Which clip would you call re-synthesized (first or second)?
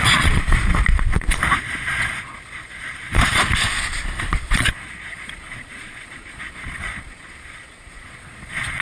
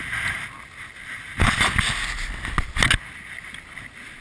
first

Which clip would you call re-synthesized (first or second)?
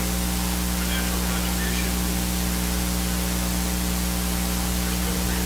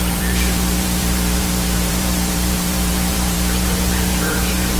second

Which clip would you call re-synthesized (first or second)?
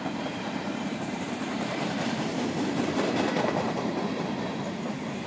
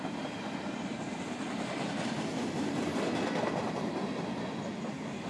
first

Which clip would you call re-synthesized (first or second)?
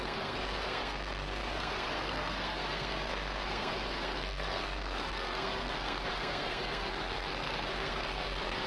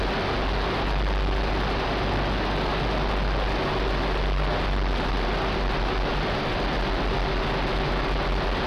first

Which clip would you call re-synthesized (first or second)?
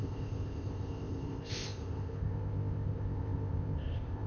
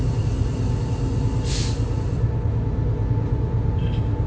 first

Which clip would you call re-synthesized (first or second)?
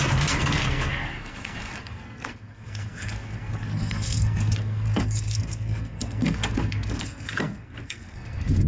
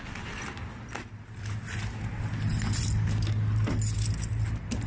first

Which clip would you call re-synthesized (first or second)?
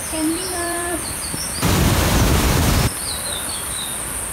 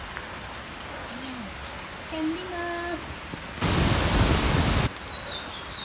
first